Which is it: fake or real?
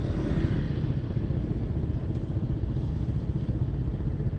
real